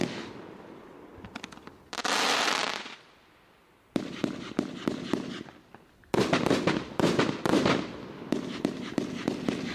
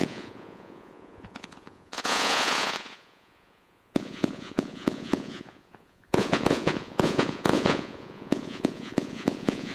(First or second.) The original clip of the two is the first